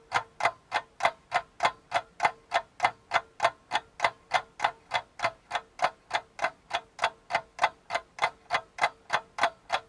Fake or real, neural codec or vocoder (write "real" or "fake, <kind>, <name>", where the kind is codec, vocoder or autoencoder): real